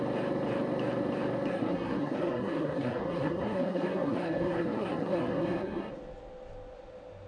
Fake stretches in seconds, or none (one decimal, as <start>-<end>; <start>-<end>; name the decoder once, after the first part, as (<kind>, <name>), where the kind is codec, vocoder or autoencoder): 1.5-5.9 (codec, SNAC)

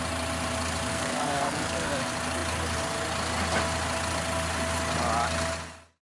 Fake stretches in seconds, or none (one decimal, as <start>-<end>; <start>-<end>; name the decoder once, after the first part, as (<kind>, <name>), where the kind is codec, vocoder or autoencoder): 0.9-1.9 (codec, SNAC)

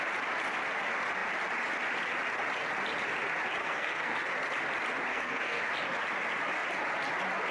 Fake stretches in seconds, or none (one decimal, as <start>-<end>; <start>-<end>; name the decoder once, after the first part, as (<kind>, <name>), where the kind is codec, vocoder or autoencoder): 3.6-4.3 (codec, SNAC); 5.1-5.7